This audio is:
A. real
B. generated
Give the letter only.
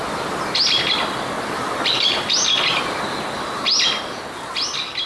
A